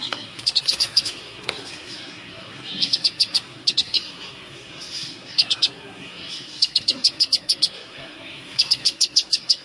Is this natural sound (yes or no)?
no